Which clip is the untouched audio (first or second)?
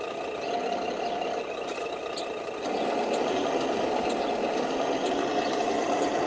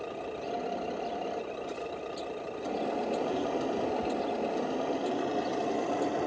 first